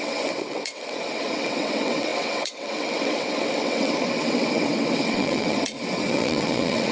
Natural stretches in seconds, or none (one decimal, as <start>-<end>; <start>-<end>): none